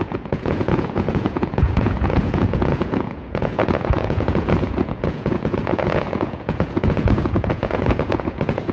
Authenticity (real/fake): fake